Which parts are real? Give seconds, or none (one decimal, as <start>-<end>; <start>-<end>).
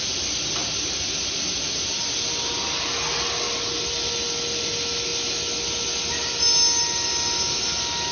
0.0-8.1